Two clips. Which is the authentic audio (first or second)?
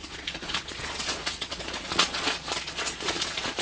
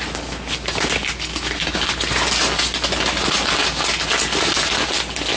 second